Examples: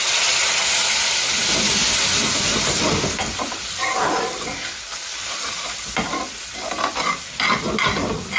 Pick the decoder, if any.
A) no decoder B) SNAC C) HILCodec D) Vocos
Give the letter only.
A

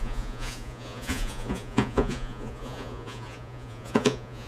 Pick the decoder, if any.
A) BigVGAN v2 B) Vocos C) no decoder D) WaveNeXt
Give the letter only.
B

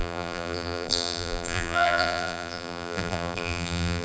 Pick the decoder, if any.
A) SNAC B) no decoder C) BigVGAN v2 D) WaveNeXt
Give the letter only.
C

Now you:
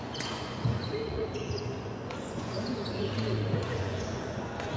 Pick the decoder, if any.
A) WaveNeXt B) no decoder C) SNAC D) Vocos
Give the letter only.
D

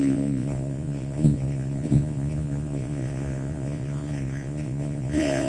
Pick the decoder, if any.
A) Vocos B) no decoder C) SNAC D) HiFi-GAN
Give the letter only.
A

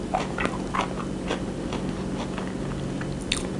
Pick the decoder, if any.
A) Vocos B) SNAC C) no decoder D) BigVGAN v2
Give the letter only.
C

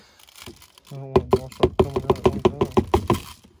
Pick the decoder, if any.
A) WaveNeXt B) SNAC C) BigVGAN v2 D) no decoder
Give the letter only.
D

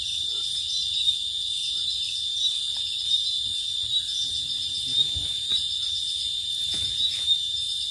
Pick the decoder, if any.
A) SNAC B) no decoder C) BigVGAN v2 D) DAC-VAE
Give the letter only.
C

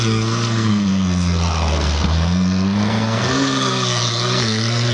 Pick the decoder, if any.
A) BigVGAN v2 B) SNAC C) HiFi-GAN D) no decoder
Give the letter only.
B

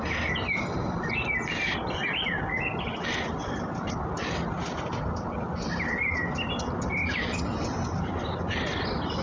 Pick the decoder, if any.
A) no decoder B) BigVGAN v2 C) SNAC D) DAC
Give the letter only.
A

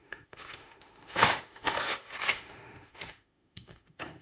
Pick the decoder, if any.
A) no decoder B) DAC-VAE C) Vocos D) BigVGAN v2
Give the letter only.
B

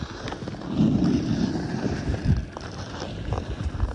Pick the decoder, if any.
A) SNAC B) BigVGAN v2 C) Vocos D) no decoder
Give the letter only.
D